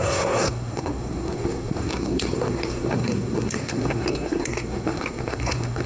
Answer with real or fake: fake